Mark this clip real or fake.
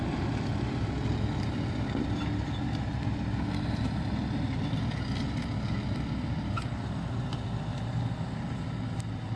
real